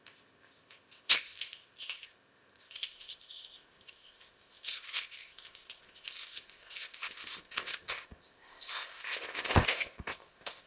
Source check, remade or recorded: remade